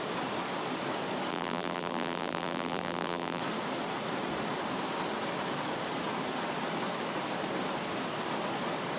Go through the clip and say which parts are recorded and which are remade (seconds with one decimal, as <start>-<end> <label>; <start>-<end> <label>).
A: 0.0-1.3 recorded; 1.3-3.4 remade; 3.4-9.0 recorded